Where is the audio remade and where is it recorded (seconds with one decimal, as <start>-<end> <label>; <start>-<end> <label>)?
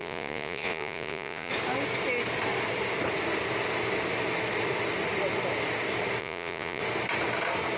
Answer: 0.0-1.5 remade; 1.5-6.2 recorded; 6.2-6.8 remade; 6.8-7.8 recorded